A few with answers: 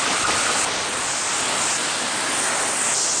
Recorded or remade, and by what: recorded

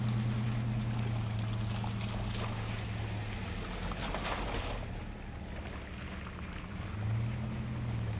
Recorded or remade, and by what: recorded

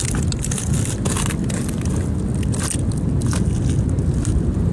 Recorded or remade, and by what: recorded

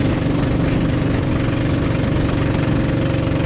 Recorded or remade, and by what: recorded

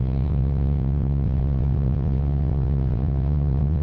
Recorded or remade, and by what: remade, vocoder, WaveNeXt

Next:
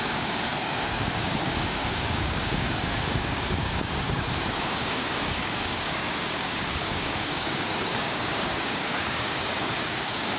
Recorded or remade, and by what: remade, codec, DAC